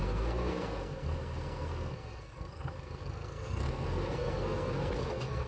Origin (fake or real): fake